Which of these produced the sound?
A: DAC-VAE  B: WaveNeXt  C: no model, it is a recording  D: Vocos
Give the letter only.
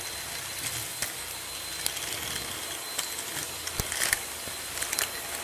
C